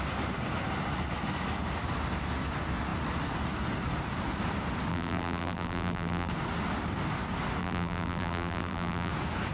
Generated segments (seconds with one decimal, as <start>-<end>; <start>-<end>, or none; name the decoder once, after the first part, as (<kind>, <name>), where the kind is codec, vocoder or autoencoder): 4.9-6.3 (vocoder, BigVGAN v2); 7.6-9.1